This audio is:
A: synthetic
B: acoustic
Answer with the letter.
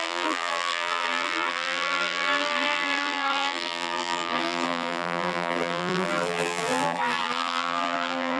A